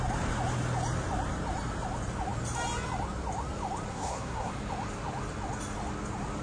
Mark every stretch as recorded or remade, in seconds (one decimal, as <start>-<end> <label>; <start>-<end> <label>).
0.0-3.9 recorded; 3.9-4.5 remade; 4.5-6.4 recorded